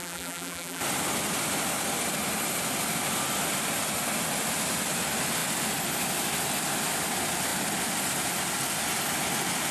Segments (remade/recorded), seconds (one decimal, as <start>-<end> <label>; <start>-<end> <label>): 0.0-0.8 remade; 0.8-9.7 recorded